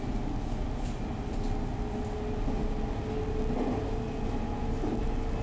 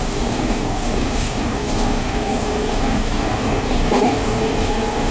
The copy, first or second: second